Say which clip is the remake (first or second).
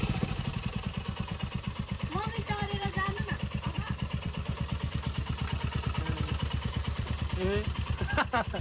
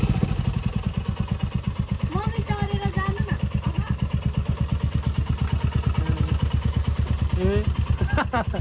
first